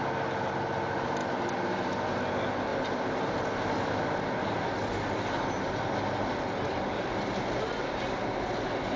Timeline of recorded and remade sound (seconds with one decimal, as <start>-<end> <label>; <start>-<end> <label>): 0.0-9.0 recorded